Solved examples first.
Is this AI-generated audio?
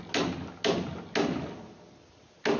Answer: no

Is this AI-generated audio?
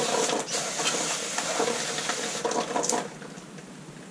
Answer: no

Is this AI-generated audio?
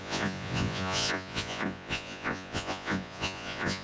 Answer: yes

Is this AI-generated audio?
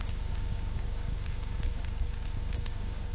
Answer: yes